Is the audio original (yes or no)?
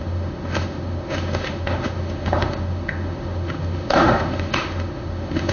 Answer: no